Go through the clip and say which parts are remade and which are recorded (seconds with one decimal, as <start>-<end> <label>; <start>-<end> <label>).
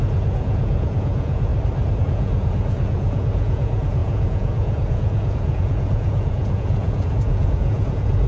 0.0-1.5 remade; 1.5-2.0 recorded; 2.0-8.3 remade